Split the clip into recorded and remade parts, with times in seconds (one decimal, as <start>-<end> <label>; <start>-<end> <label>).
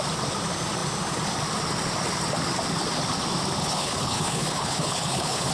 0.0-3.6 recorded; 3.6-5.5 remade